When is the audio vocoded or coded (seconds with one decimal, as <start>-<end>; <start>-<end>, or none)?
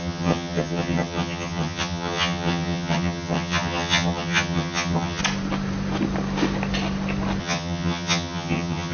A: 0.0-5.2; 7.4-8.9